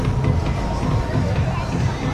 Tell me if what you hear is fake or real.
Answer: real